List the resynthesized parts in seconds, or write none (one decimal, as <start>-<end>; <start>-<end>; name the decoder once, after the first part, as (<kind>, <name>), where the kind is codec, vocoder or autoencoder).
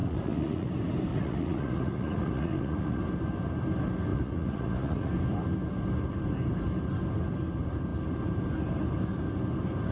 0.0-0.7 (vocoder, Vocos); 1.1-3.0; 4.1-5.1